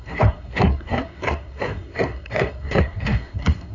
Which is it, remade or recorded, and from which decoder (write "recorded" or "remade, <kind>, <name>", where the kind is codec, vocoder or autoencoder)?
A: remade, codec, SNAC